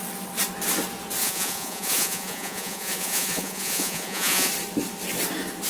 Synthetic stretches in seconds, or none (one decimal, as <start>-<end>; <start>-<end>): 1.2-4.5